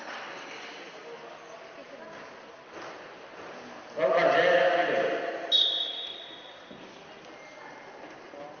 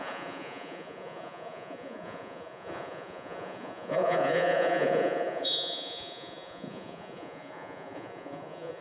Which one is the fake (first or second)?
second